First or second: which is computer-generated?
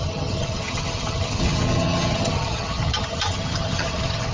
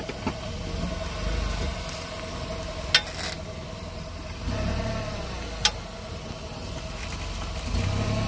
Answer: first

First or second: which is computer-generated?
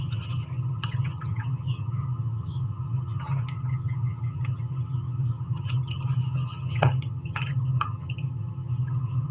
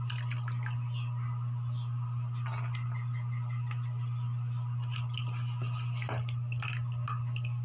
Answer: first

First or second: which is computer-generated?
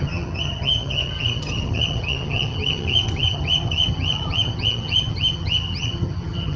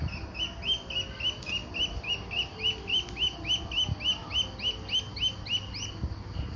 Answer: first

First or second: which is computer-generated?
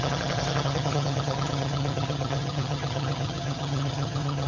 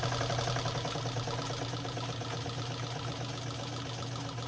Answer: first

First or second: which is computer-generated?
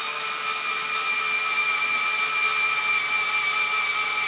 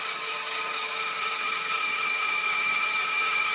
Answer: second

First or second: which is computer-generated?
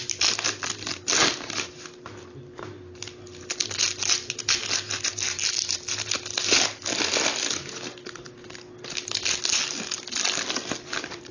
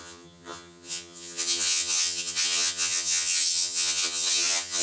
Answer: second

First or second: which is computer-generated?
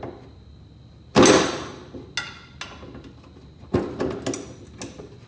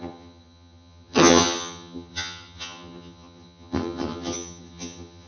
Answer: second